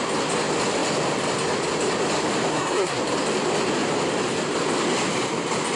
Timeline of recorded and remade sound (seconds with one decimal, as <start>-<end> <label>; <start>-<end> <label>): 0.0-2.5 recorded; 2.5-3.0 remade; 3.0-5.8 recorded